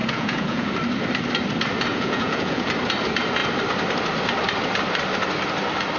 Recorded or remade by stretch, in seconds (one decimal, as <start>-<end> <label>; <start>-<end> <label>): 0.0-0.7 remade; 0.7-1.9 recorded; 1.9-2.7 remade; 2.7-6.0 recorded